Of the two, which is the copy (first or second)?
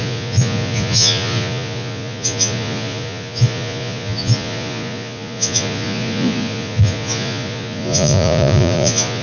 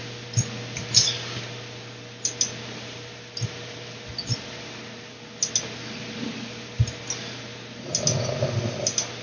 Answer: first